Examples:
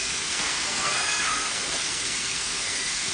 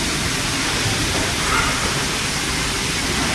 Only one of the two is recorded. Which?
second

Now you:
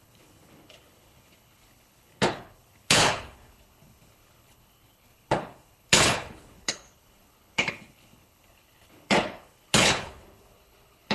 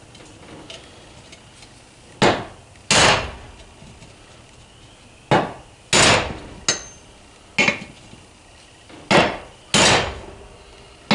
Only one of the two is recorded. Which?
second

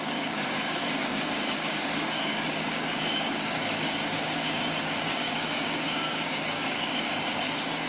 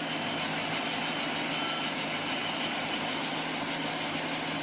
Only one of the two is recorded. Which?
second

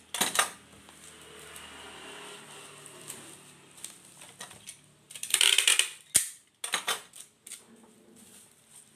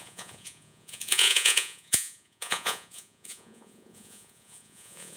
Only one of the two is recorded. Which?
first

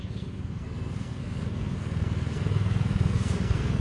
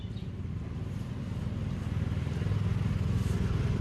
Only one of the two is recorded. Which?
second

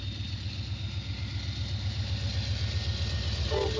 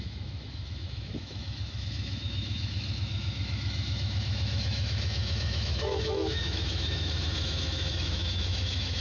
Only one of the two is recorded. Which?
first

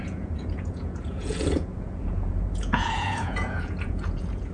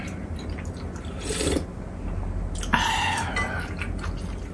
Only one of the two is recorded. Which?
second